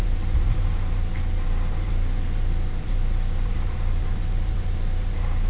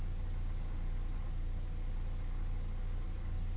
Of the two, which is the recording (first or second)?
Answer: second